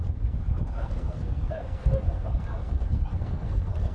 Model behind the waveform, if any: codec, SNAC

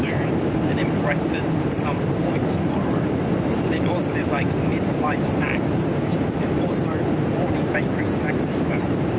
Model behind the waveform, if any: vocoder, BigVGAN v2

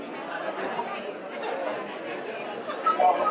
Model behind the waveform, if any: none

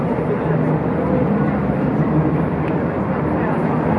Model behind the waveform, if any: vocoder, BigVGAN v2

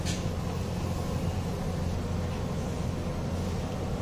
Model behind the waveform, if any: none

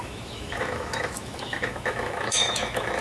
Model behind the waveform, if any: autoencoder, DAC-VAE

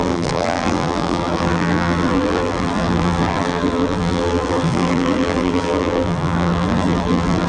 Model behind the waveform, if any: vocoder, BigVGAN v2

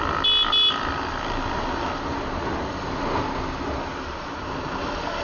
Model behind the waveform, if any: none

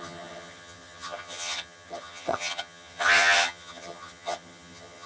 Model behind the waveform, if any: vocoder, HiFi-GAN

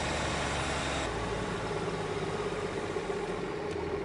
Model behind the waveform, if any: none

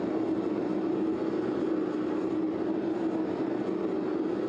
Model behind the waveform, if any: none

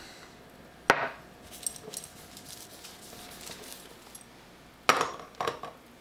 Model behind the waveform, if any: none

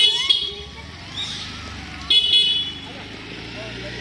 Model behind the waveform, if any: none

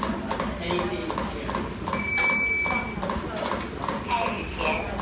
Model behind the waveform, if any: none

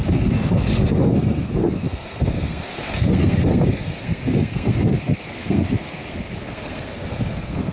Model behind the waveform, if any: codec, SNAC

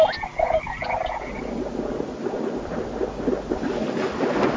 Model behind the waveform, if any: none